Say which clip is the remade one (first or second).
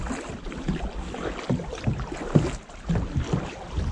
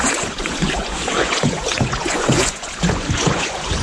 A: second